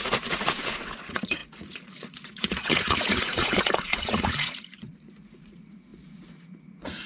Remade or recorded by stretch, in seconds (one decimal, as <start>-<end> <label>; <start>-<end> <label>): 0.0-7.1 remade